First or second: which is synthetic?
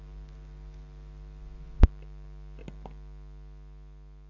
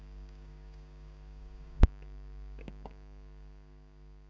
second